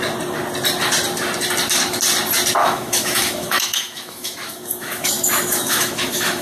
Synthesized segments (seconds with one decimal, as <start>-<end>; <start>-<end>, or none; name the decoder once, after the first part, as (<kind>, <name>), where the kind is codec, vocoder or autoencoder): 2.6-6.4 (autoencoder, DAC-VAE)